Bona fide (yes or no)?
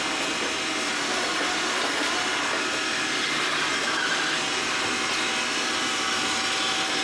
yes